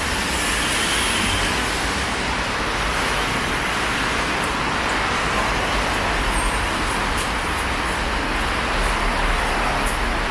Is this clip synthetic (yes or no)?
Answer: no